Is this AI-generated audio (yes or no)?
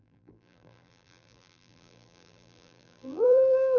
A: yes